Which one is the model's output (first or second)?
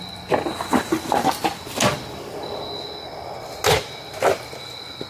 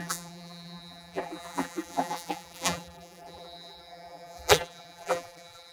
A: second